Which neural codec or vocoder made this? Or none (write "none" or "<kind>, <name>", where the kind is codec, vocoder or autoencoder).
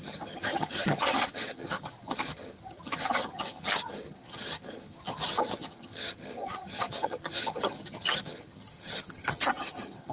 vocoder, HiFi-GAN